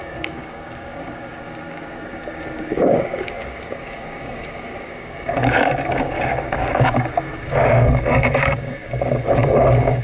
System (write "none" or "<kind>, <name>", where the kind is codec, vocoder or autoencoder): codec, DAC